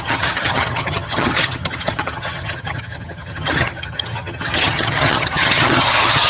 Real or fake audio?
fake